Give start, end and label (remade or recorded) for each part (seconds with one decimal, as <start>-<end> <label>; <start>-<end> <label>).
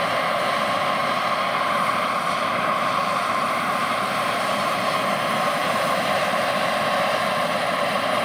0.0-3.0 recorded; 3.0-4.8 remade; 4.8-5.6 recorded; 5.6-7.3 remade; 7.3-8.2 recorded